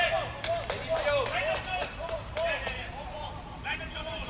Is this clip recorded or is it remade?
remade